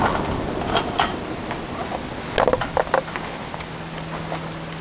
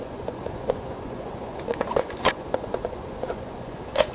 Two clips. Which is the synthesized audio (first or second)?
second